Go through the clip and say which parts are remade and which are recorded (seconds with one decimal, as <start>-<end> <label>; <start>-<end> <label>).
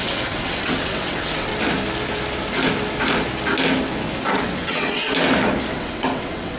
0.0-1.5 remade; 1.5-4.4 recorded; 4.4-5.0 remade; 5.0-5.7 recorded; 5.7-6.6 remade